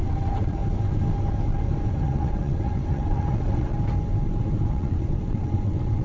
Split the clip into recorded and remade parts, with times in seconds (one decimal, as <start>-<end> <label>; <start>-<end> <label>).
0.0-0.6 remade; 0.6-1.8 recorded; 1.8-3.7 remade; 3.7-4.7 recorded; 4.7-6.0 remade